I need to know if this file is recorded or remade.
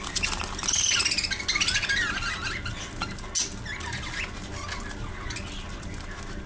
recorded